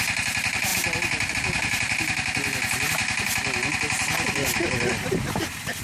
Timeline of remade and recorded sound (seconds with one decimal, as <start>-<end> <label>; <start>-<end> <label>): 0.0-5.8 recorded